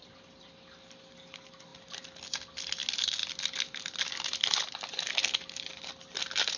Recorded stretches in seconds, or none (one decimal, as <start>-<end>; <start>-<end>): 0.0-6.6